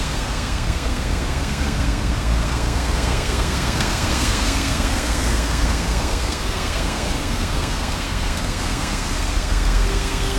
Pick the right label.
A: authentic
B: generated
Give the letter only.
B